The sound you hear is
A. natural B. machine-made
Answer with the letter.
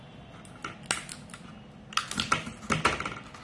A